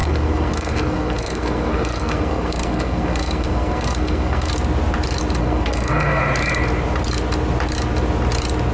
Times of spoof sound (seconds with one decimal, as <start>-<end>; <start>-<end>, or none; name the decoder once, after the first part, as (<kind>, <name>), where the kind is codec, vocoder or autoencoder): 0.0-4.5 (codec, SNAC); 5.4-6.2